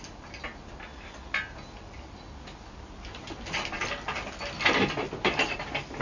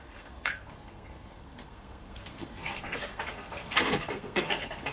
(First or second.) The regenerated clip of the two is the second